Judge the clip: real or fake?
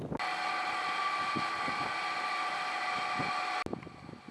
real